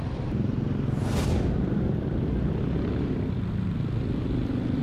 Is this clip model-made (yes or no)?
no